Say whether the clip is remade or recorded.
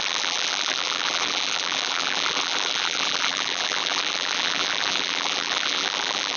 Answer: remade